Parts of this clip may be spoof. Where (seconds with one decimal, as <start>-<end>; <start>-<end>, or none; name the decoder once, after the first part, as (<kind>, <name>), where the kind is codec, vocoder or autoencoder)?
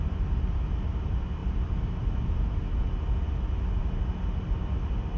none